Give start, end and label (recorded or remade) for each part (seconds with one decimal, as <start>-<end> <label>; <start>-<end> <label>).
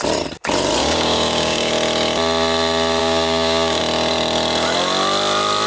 0.0-0.8 recorded; 0.8-1.7 remade; 1.7-3.0 recorded; 3.0-3.8 remade; 3.8-5.7 recorded